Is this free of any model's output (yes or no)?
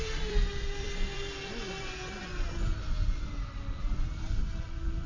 no